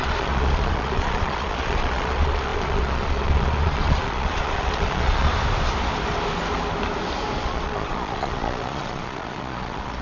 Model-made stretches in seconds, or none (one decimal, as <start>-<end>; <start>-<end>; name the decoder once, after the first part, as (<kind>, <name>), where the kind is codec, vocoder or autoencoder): 0.0-5.3 (vocoder, Vocos); 7.4-10.0